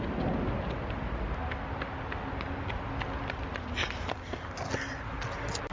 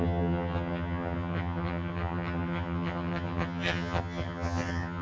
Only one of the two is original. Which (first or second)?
first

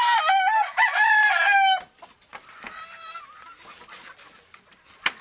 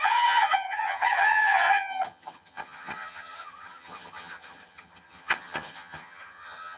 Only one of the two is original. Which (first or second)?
first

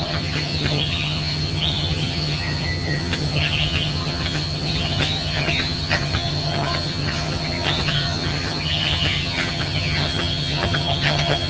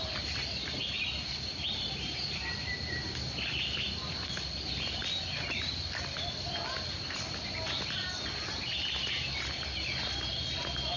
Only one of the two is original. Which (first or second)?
second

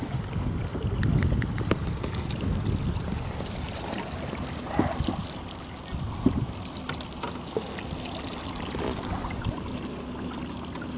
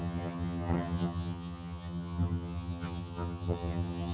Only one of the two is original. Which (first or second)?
first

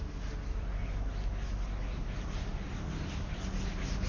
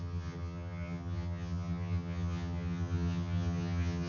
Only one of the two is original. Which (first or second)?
first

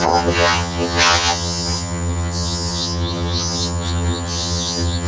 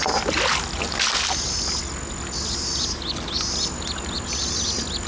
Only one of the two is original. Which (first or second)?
second